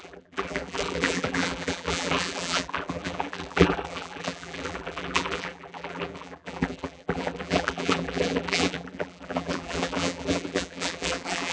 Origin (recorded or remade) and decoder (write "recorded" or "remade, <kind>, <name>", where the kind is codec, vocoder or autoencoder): remade, vocoder, BigVGAN v2